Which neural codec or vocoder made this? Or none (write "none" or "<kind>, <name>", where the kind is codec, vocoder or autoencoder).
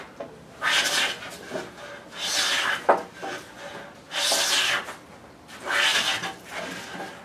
none